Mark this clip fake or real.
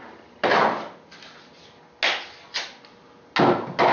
real